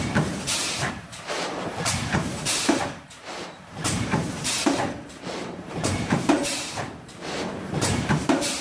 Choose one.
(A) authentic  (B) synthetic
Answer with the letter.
B